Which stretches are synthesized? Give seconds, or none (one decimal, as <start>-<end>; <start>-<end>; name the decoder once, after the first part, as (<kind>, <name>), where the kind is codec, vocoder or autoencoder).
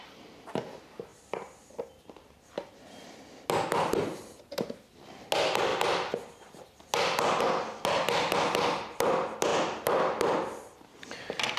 1.1-2.1 (vocoder, BigVGAN v2)